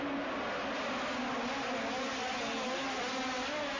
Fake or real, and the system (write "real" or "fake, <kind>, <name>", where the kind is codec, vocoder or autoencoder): real